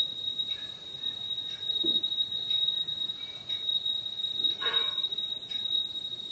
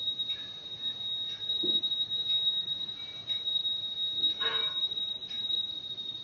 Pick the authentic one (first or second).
second